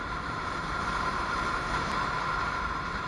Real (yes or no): no